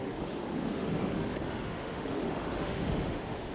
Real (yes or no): no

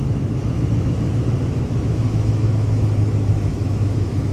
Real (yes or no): no